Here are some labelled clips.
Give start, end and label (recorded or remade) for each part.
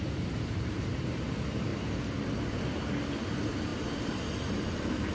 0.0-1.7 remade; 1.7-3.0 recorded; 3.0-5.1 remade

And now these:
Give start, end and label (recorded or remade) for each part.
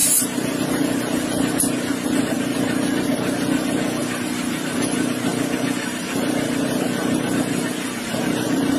0.0-8.8 recorded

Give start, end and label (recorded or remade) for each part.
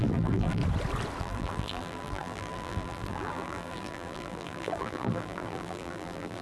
0.0-0.6 remade; 0.6-1.2 recorded; 1.2-6.4 remade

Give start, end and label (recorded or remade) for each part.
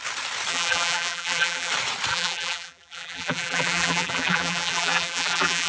0.0-0.5 recorded; 0.5-1.7 remade; 1.7-2.1 recorded; 2.1-5.7 remade